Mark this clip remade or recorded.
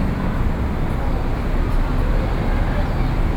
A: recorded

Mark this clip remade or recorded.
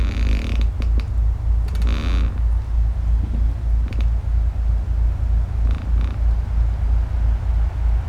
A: recorded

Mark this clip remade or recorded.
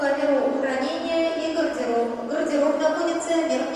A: recorded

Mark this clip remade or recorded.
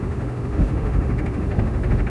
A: remade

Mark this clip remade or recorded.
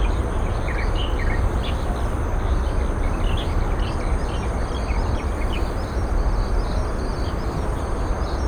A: recorded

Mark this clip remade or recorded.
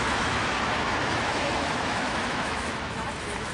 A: remade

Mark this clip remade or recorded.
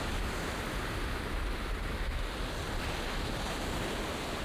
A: recorded